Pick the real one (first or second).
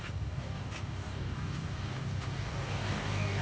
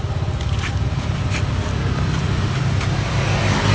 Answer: second